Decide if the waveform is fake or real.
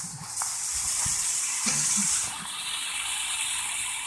real